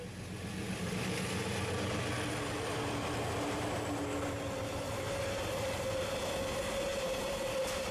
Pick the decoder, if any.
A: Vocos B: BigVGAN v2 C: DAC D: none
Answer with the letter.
D